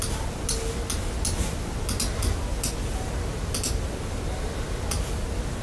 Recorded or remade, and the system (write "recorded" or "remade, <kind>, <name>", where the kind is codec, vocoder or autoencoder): recorded